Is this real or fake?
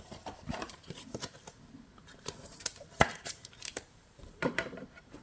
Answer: fake